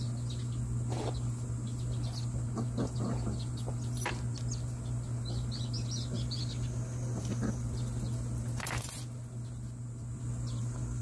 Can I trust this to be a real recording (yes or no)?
yes